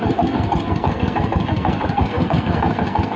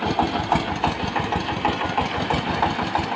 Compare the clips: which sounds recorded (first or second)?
second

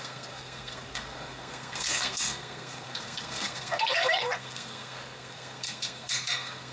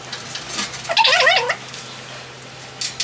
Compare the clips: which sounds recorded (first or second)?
second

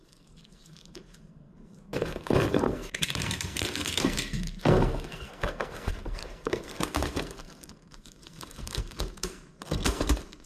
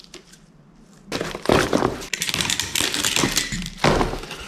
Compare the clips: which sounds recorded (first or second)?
second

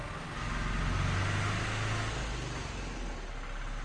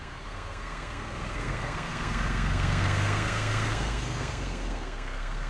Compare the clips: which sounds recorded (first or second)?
first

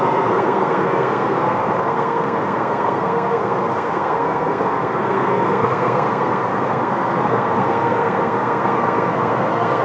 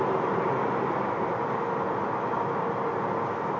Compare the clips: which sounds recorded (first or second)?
second